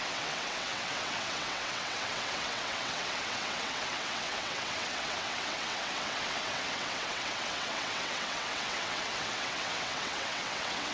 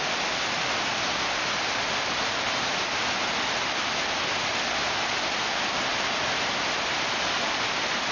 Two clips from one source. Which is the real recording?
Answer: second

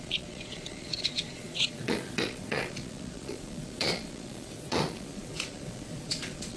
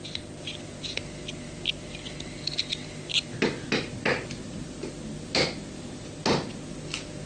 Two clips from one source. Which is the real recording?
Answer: second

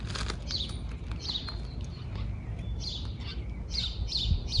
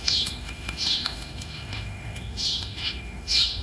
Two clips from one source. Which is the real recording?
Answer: first